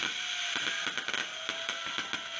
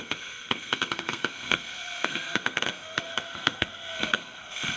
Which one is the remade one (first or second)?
second